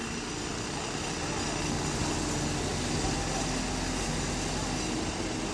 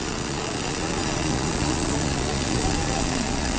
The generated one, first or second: second